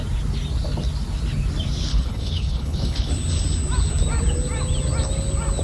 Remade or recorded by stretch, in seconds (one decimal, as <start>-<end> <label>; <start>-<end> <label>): 0.0-1.9 recorded; 1.9-3.1 remade; 3.1-5.6 recorded